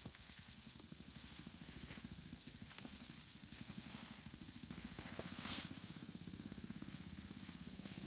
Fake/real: fake